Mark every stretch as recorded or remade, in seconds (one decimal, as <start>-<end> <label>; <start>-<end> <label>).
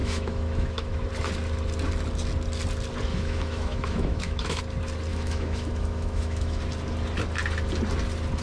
0.0-1.1 remade; 1.1-3.1 recorded; 3.1-4.6 remade; 4.6-5.1 recorded; 5.1-6.6 remade; 6.6-8.4 recorded